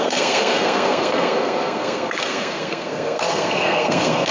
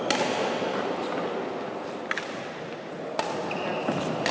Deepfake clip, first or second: first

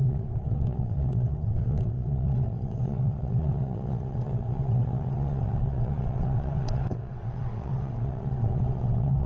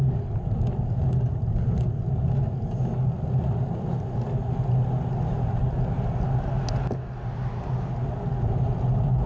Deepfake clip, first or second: first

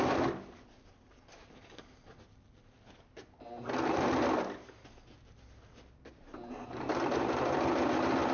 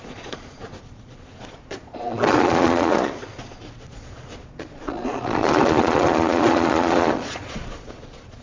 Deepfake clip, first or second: second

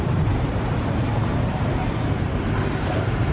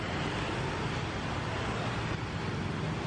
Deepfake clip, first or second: first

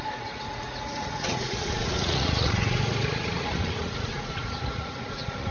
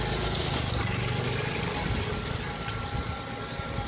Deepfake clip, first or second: first